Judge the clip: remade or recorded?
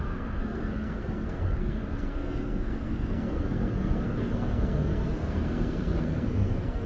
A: remade